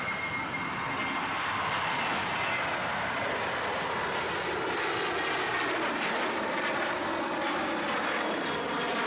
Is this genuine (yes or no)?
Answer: yes